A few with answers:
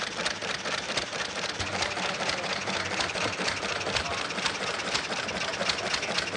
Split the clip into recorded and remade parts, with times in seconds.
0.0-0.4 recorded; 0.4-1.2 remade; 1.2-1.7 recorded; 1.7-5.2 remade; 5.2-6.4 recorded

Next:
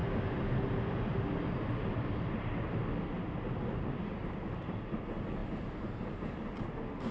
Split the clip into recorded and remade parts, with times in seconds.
0.0-7.1 recorded

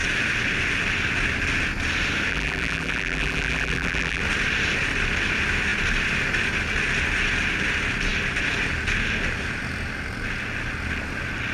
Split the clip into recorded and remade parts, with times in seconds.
0.0-2.3 recorded; 2.3-4.2 remade; 4.2-11.5 recorded

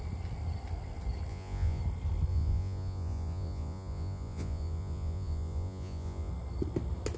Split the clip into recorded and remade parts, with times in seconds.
0.0-1.3 recorded; 1.3-1.8 remade; 1.8-2.3 recorded; 2.3-6.3 remade; 6.3-7.2 recorded

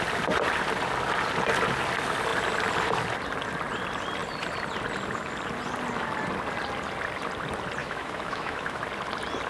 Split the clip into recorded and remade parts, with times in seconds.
0.0-7.8 recorded; 7.8-8.8 remade; 8.8-9.5 recorded

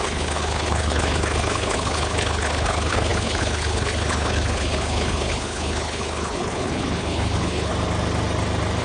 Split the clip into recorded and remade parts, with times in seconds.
0.0-7.7 remade; 7.7-8.8 recorded

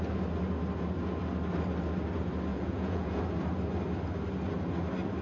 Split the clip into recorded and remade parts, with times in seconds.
0.0-2.5 recorded; 2.5-3.2 remade; 3.2-5.2 recorded